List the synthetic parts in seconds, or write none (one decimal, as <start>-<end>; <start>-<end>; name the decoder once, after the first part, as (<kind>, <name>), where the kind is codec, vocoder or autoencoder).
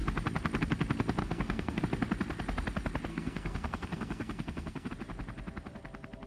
1.2-1.8 (codec, SNAC); 3.1-4.9